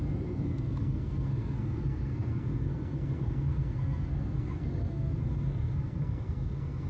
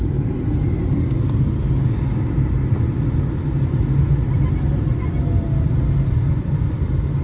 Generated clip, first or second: first